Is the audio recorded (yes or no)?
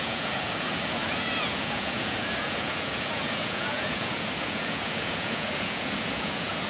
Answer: no